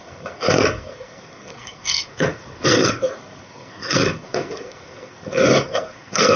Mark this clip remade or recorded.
remade